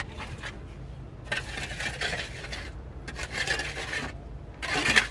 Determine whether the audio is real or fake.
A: real